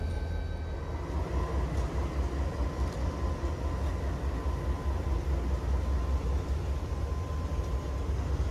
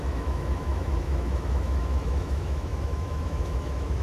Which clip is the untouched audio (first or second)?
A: first